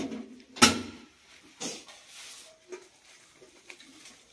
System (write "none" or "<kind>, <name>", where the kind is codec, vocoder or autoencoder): none